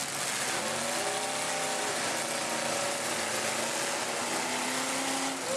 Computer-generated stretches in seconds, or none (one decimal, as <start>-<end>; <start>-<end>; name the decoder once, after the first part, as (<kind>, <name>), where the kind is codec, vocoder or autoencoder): none